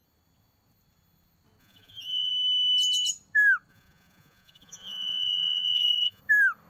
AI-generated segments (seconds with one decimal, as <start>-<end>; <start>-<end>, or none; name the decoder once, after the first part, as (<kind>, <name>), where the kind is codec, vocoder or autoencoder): 1.6-2.3 (vocoder, Vocos); 3.7-6.2